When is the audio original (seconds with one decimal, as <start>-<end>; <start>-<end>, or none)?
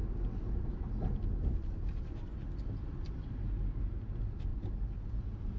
0.0-4.5; 5.1-5.6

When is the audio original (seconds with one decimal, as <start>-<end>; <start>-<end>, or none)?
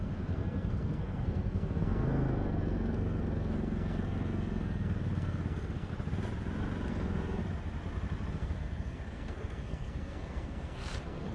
5.9-6.9; 7.4-8.3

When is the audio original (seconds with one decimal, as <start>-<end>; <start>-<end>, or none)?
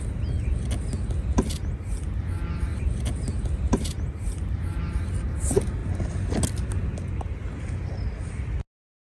0.0-2.7; 4.8-9.2